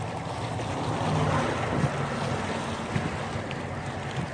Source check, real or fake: real